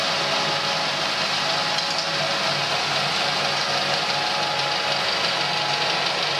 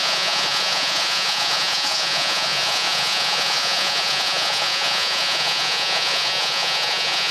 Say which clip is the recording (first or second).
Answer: first